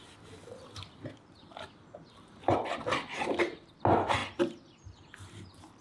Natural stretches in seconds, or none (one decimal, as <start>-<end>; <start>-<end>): 0.0-5.8